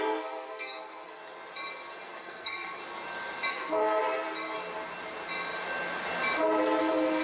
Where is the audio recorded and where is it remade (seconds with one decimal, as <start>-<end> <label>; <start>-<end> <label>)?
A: 0.0-1.2 remade; 1.2-2.0 recorded; 2.0-2.8 remade; 2.8-3.5 recorded; 3.5-4.0 remade; 4.0-6.8 recorded; 6.8-7.2 remade